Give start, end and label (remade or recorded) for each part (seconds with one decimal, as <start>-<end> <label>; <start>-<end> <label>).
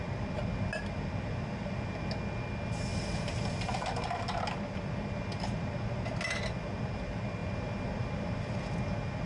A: 0.0-2.9 recorded; 2.9-4.2 remade; 4.2-9.3 recorded